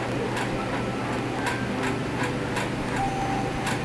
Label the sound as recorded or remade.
recorded